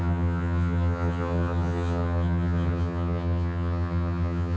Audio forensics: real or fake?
fake